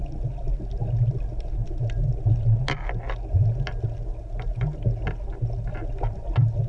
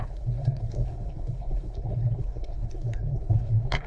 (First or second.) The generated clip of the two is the second